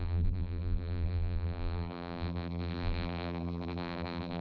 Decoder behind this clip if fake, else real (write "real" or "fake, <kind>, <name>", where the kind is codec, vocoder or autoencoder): fake, vocoder, BigVGAN v2